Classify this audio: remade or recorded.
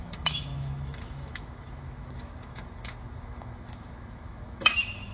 remade